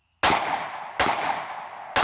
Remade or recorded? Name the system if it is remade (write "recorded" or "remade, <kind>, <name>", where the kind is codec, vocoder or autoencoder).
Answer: recorded